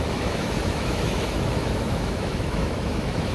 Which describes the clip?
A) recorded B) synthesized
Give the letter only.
B